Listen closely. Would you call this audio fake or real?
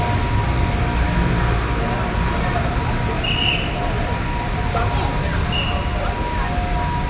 real